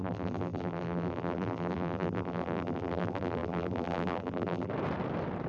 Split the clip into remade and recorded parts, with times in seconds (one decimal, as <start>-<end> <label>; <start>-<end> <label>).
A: 0.0-4.7 remade; 4.7-5.5 recorded